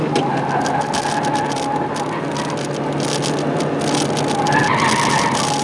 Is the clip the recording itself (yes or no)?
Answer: yes